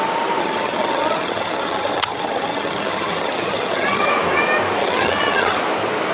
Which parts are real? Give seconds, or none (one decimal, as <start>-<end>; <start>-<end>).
0.0-0.4; 4.1-4.8; 5.6-6.1